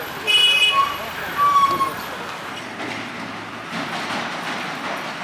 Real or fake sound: real